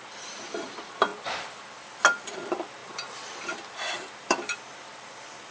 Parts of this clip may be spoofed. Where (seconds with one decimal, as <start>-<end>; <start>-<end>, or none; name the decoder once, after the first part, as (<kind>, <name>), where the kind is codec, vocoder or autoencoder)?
2.8-5.5 (vocoder, BigVGAN v2)